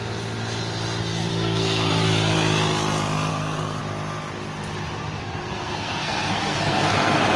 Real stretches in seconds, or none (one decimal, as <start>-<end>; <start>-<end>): 0.0-1.3; 1.9-3.3; 3.8-5.2